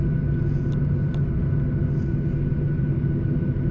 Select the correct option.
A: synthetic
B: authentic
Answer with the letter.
B